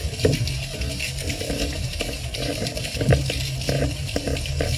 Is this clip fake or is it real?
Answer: real